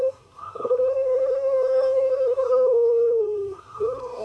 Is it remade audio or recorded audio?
remade